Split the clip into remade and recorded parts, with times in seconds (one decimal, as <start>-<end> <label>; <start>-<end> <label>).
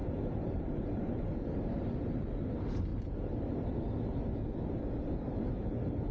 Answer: 0.0-1.1 remade; 1.1-6.1 recorded